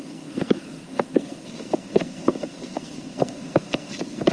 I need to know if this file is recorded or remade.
remade